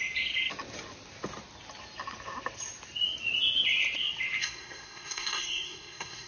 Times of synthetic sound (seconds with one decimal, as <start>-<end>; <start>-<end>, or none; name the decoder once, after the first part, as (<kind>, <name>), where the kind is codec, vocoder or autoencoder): 4.4-6.3 (codec, SNAC)

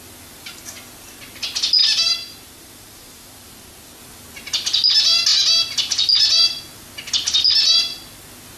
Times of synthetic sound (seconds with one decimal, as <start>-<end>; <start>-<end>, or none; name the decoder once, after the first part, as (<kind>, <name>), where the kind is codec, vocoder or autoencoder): 1.8-4.0 (vocoder, BigVGAN v2)

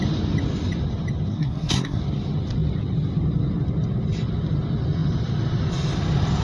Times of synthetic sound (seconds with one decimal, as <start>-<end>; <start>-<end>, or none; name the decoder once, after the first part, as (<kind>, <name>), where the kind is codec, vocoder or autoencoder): 1.3-2.0 (codec, SNAC)